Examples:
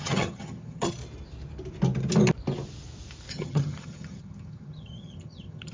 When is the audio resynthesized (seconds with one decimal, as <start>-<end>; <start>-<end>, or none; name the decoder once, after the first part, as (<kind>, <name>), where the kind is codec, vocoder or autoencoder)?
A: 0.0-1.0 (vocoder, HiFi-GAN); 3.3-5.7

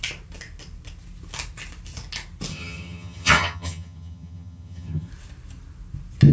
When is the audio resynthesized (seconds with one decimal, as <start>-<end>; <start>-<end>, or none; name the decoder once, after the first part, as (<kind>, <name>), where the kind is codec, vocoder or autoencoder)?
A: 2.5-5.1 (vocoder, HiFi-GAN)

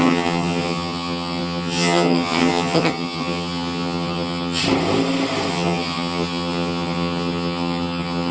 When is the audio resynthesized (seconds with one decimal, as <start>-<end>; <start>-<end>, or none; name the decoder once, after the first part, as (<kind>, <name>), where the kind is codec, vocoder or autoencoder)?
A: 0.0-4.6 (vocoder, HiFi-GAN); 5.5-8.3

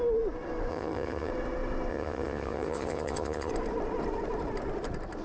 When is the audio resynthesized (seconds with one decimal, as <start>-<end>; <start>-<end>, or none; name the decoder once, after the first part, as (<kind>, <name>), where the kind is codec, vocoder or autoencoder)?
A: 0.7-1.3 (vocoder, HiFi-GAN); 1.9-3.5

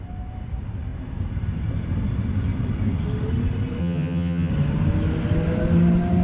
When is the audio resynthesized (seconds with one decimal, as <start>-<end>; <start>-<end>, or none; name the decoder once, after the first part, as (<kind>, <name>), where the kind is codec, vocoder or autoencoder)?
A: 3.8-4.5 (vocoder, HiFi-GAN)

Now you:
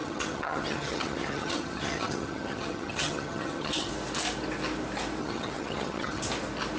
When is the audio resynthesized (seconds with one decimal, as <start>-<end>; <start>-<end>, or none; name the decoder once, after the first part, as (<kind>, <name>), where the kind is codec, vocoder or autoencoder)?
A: 0.0-3.9 (vocoder, HiFi-GAN); 5.2-6.2

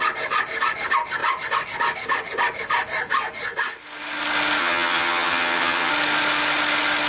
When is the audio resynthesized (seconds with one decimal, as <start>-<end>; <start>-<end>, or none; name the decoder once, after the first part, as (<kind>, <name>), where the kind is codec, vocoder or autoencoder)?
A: 4.6-5.9 (vocoder, HiFi-GAN)